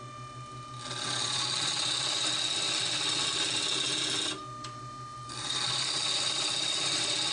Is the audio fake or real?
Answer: real